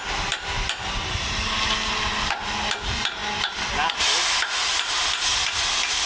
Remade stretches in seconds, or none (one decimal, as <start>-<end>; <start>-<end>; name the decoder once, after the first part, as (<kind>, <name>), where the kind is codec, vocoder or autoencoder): none